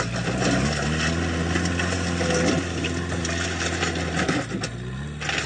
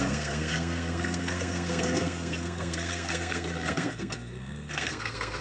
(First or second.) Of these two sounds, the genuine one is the first